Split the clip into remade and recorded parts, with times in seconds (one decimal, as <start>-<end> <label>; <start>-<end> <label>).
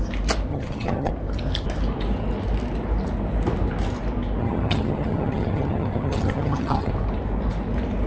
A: 0.0-0.5 recorded; 0.5-1.1 remade; 1.1-4.4 recorded; 4.4-6.9 remade; 6.9-8.1 recorded